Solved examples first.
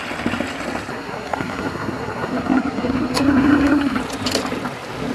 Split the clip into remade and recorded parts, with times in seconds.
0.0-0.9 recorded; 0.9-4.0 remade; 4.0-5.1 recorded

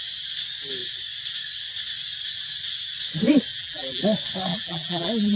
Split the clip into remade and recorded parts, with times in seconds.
0.0-3.5 recorded; 3.5-4.0 remade; 4.0-4.5 recorded; 4.5-5.4 remade

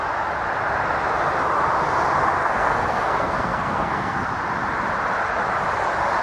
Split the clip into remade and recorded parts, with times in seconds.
0.0-2.4 recorded; 2.4-4.3 remade; 4.3-6.2 recorded

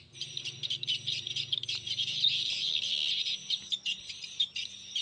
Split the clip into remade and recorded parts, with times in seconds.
0.0-5.0 remade

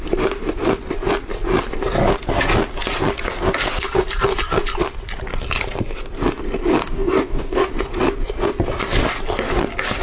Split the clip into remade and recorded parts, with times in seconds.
0.0-6.8 recorded; 6.8-7.7 remade; 7.7-10.0 recorded